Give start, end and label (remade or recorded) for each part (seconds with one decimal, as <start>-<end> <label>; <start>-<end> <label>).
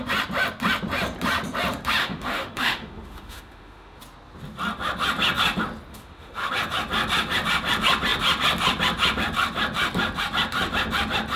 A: 0.0-2.0 recorded; 2.0-4.0 remade; 4.0-5.9 recorded; 5.9-6.5 remade; 6.5-11.4 recorded